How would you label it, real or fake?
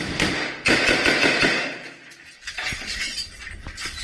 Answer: real